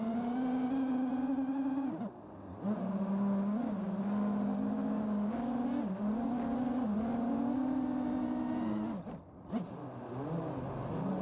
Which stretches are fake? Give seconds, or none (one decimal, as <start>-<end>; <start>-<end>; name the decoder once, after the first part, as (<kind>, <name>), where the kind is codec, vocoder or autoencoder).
none